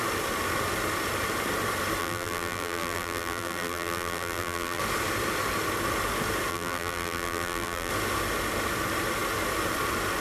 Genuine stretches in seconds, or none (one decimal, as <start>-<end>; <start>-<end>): 0.0-2.0; 4.8-6.5; 7.9-10.2